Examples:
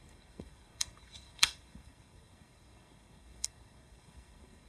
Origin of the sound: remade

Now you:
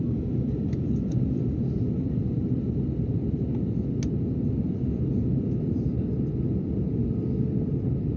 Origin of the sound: recorded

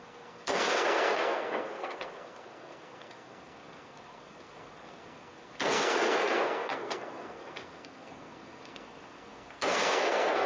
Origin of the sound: remade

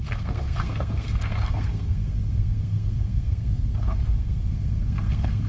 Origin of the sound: remade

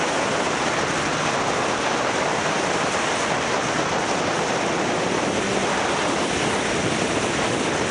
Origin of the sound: recorded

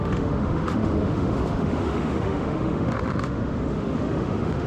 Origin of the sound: remade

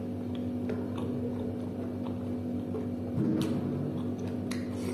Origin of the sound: recorded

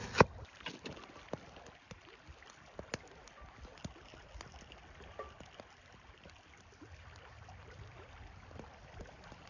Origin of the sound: recorded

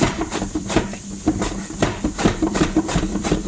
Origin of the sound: remade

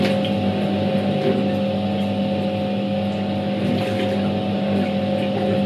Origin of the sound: recorded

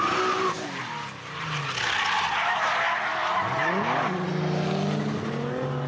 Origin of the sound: recorded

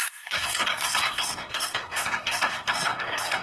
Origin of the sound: remade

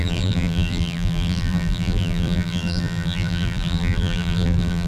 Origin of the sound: remade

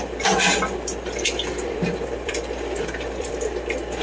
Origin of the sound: remade